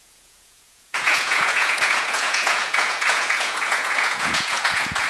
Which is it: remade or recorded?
remade